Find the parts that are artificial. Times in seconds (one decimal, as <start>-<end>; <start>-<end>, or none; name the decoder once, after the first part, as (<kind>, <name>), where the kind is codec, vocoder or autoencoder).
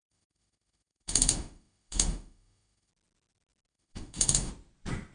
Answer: 0.0-2.9 (autoencoder, DAC-VAE); 3.7-4.5